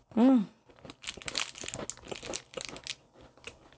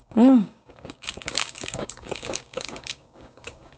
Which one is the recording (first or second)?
first